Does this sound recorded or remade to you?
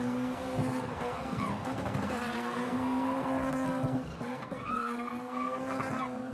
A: remade